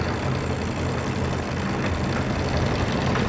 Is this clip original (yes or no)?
yes